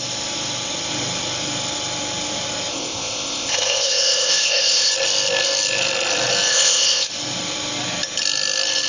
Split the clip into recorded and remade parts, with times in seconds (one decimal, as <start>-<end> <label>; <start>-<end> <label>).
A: 0.0-2.7 recorded; 2.7-4.9 remade; 4.9-6.5 recorded; 6.5-7.1 remade; 7.1-8.9 recorded